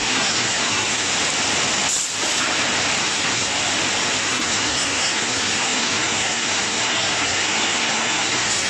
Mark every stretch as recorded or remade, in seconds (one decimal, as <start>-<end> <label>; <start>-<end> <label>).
0.0-1.1 remade; 1.1-3.0 recorded; 3.0-3.5 remade; 3.5-4.2 recorded; 4.2-8.7 remade

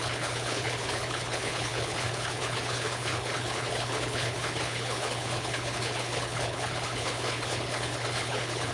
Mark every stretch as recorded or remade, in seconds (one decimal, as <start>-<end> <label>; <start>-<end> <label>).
0.0-8.7 remade

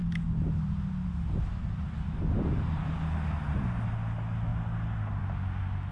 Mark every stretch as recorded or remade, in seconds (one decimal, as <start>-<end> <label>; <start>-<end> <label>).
0.0-5.9 recorded

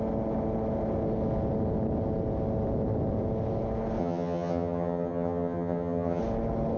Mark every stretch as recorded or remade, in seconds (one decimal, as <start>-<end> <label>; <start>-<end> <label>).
0.0-4.0 recorded; 4.0-6.2 remade; 6.2-6.8 recorded

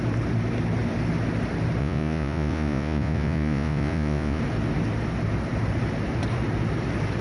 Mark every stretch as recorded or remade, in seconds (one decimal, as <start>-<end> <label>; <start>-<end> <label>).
0.0-1.8 recorded; 1.8-4.4 remade; 4.4-7.2 recorded